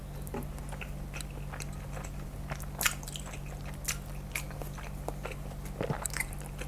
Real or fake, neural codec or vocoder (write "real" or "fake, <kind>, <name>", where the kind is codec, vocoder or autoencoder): real